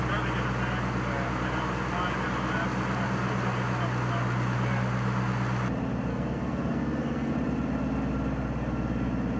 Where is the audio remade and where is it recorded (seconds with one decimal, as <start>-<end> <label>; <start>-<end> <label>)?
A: 0.0-6.1 recorded; 6.1-7.3 remade; 7.3-9.4 recorded